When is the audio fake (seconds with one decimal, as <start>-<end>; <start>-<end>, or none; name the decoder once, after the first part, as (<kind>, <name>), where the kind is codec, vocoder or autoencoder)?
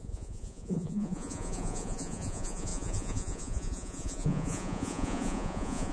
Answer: 0.0-5.9 (vocoder, Vocos)